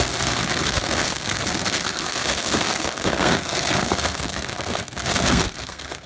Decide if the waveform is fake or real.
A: fake